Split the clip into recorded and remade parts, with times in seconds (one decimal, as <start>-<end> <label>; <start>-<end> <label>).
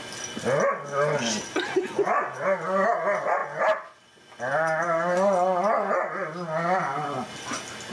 0.0-7.9 recorded